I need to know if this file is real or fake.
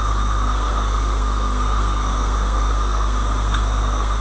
fake